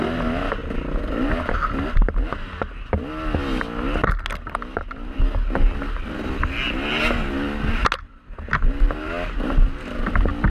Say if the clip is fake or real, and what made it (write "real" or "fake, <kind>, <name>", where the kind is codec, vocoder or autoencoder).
real